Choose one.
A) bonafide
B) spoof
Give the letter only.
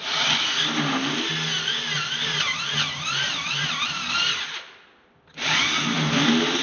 A